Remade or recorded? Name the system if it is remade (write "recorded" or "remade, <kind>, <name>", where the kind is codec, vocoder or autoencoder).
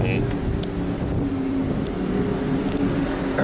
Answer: recorded